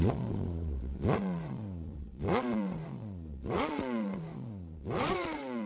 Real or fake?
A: fake